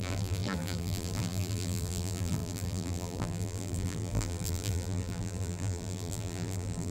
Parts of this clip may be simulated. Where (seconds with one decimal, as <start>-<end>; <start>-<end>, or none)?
0.0-6.9